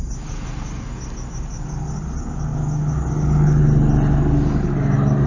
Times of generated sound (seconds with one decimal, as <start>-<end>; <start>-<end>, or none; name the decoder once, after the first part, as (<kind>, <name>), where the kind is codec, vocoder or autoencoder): none